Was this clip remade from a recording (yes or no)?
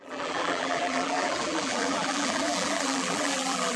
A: yes